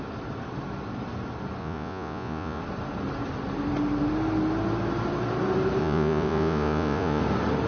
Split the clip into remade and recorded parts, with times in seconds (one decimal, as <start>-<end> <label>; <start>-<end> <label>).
0.0-1.6 recorded; 1.6-2.6 remade; 2.6-5.8 recorded; 5.8-7.2 remade; 7.2-7.7 recorded